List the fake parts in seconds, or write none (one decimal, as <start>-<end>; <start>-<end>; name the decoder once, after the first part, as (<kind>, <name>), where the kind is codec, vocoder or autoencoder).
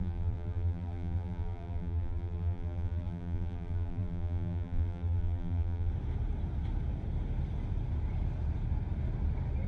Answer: 0.0-5.9 (vocoder, BigVGAN v2)